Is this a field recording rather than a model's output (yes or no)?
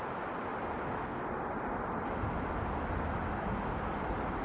yes